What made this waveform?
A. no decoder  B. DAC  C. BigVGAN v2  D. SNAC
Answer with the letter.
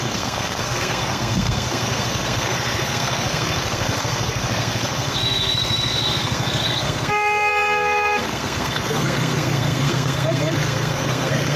D